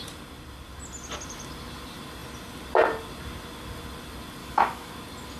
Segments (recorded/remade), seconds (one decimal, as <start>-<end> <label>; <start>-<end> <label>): 0.0-4.4 recorded; 4.4-4.9 remade; 4.9-5.4 recorded